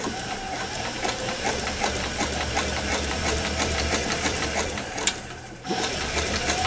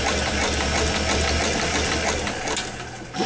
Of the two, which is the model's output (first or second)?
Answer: first